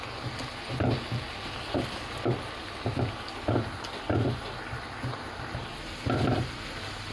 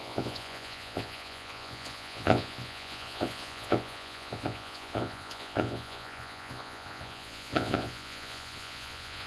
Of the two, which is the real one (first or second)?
first